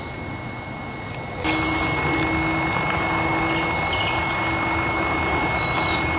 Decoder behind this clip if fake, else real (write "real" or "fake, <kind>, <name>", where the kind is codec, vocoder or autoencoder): real